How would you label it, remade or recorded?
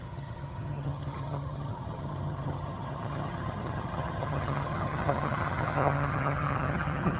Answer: remade